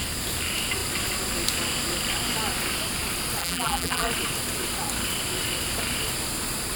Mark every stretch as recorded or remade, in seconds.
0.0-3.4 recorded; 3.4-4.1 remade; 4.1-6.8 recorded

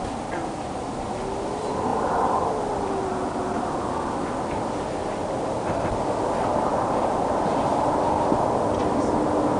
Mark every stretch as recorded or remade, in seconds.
0.0-1.9 recorded; 1.9-4.7 remade; 4.7-6.7 recorded; 6.7-8.1 remade; 8.1-9.6 recorded

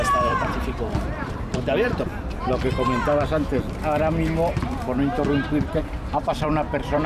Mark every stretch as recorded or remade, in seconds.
0.0-2.1 remade; 2.1-5.8 recorded; 5.8-7.1 remade

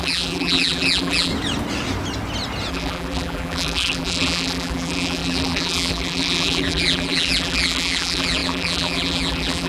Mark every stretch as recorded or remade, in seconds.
0.0-1.3 remade; 1.3-2.7 recorded; 2.7-9.7 remade